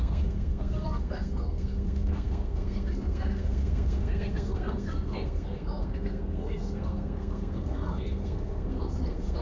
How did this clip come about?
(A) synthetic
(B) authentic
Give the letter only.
A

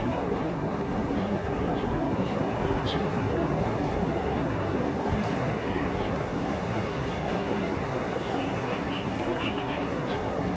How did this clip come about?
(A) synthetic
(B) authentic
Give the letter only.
A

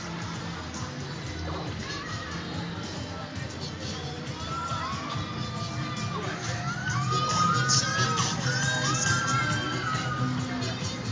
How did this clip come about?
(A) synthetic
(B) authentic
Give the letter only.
B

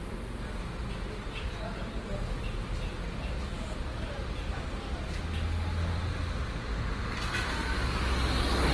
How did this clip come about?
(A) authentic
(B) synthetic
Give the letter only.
A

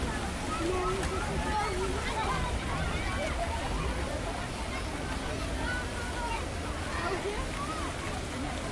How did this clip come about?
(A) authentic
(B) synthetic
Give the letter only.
A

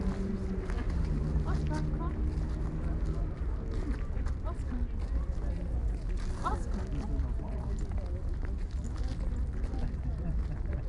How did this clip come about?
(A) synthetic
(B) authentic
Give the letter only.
B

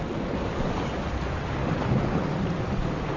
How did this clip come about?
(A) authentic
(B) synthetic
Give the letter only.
A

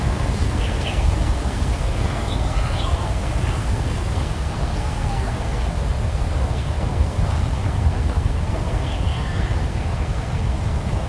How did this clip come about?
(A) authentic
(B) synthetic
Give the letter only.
B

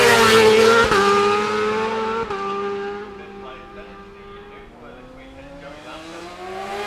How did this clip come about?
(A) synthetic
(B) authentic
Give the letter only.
B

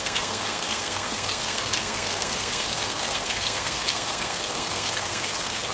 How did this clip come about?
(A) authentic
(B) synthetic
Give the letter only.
B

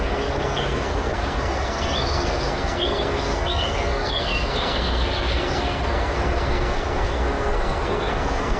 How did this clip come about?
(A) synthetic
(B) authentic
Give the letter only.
A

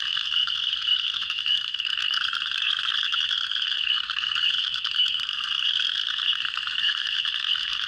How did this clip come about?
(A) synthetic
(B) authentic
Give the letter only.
A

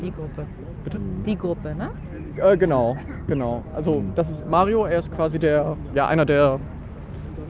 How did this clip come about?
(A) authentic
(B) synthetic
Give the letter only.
A